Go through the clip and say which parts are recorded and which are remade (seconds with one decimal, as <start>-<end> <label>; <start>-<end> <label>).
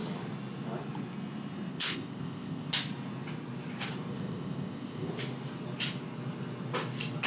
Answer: 0.0-1.7 recorded; 1.7-2.7 remade; 2.7-4.1 recorded; 4.1-5.1 remade; 5.1-7.3 recorded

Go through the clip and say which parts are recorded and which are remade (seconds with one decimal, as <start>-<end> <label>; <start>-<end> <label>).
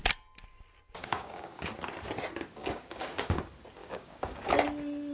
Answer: 0.0-1.0 recorded; 1.0-1.7 remade; 1.7-2.6 recorded; 2.6-3.4 remade; 3.4-3.8 recorded; 3.8-4.5 remade; 4.5-5.1 recorded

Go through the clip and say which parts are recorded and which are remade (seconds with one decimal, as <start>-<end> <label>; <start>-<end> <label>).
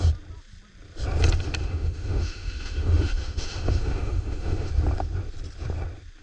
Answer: 0.0-1.6 recorded; 1.6-4.7 remade; 4.7-6.2 recorded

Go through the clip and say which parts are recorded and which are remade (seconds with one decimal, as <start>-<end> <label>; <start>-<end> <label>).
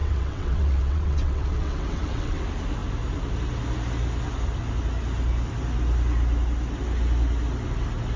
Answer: 0.0-2.4 remade; 2.4-8.2 recorded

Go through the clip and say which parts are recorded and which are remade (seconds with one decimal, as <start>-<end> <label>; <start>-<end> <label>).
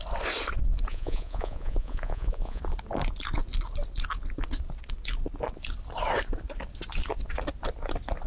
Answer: 0.0-0.9 recorded; 0.9-2.6 remade; 2.6-8.3 recorded